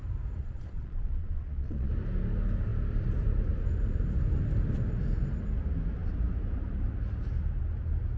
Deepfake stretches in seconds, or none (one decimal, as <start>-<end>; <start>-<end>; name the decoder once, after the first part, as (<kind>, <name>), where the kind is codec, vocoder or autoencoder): 0.4-1.9 (vocoder, Vocos)